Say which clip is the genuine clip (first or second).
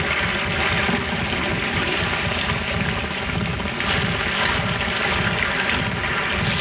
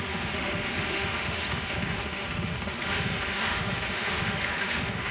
first